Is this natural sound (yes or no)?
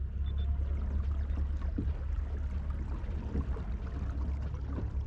yes